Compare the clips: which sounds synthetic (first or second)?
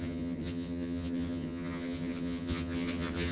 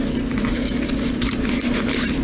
first